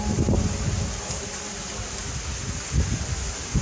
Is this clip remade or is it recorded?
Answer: recorded